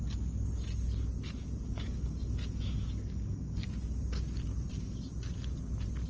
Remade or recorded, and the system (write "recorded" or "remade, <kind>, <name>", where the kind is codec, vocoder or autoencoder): recorded